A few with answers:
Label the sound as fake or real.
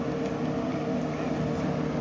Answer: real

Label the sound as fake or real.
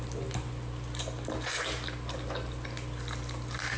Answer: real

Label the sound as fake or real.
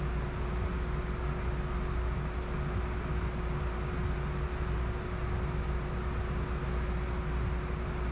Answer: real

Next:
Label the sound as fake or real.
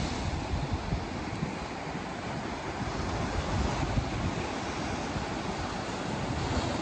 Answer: real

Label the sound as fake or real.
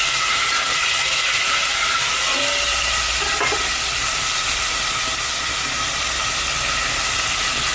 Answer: fake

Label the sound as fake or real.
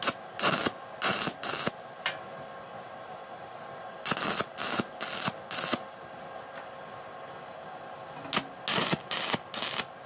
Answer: real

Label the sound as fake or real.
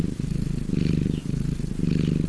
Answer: real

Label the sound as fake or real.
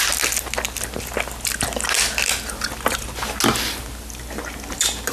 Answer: real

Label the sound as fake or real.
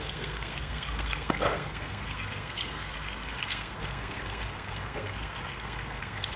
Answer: fake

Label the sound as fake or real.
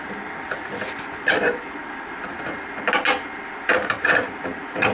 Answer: real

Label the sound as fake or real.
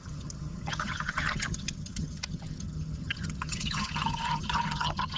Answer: fake